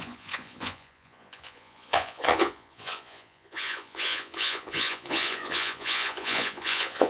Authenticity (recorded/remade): remade